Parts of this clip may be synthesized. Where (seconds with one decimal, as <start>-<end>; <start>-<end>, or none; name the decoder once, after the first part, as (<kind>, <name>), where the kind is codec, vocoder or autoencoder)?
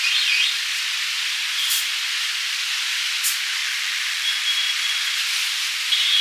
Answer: 3.6-4.4 (vocoder, BigVGAN v2)